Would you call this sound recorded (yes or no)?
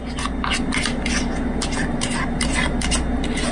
yes